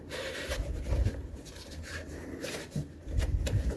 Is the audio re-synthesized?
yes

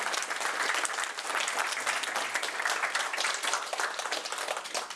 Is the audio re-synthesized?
no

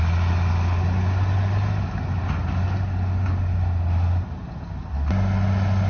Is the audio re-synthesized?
no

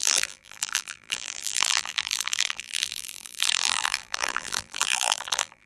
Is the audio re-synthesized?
yes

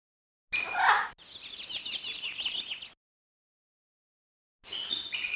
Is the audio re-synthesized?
no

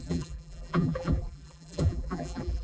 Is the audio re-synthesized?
yes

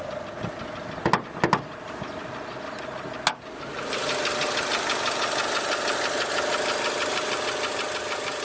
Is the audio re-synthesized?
no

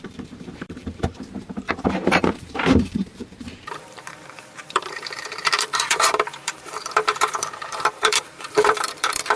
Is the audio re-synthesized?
yes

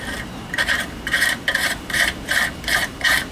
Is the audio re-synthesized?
yes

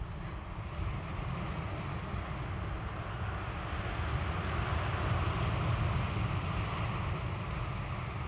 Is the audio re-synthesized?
no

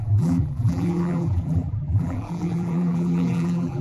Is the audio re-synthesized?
yes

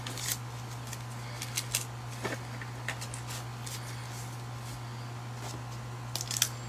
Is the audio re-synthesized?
no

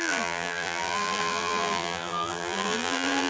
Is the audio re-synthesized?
yes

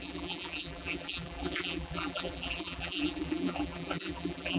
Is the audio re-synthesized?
yes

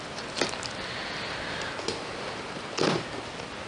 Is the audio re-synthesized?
no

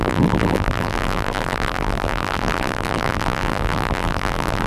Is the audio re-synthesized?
yes